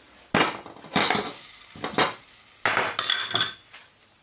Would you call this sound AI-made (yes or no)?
no